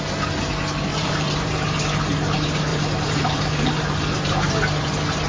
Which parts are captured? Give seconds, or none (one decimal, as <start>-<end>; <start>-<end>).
0.0-0.9; 1.6-2.7; 4.5-5.3